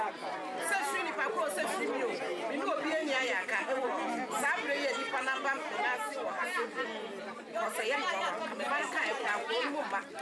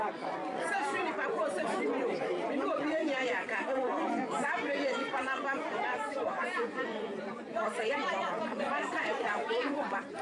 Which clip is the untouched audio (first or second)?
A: first